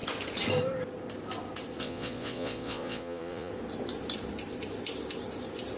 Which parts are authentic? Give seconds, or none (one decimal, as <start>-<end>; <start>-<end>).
0.0-1.8; 3.5-5.8